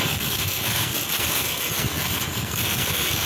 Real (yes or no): no